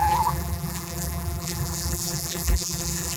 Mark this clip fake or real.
fake